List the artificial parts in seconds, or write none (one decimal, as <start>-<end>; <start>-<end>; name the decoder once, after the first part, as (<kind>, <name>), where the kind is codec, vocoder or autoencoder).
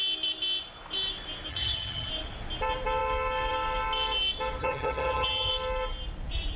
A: 1.5-2.1 (vocoder, HiFi-GAN); 4.6-5.5